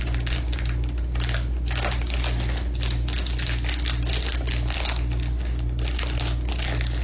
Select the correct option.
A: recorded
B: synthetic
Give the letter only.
A